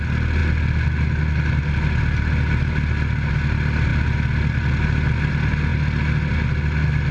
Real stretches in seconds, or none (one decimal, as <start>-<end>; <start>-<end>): 0.0-7.1